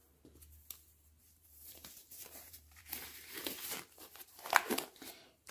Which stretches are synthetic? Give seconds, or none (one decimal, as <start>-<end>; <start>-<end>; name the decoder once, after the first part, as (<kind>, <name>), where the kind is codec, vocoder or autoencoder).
1.2-3.4 (vocoder, BigVGAN v2); 5.1-5.5